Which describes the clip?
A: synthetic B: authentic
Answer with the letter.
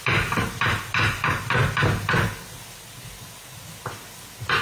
B